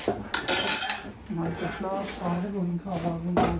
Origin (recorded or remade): recorded